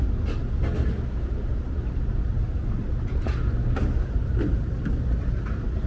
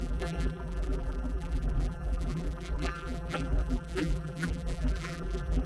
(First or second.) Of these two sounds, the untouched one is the first